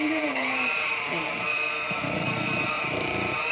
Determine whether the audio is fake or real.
fake